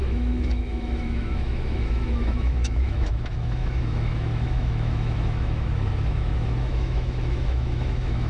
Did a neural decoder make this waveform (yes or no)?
yes